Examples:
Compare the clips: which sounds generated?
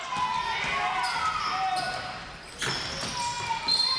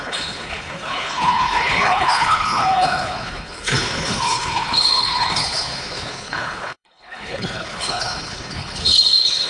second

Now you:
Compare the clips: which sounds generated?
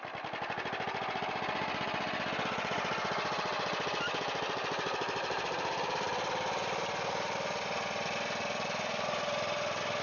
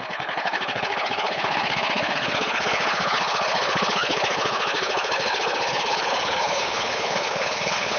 second